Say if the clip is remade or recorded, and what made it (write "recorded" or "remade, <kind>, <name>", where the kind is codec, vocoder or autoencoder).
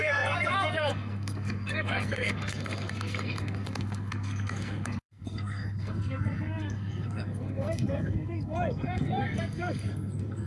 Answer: remade, codec, SNAC